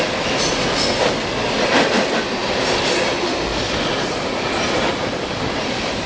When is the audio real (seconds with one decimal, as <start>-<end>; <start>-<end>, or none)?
0.0-6.1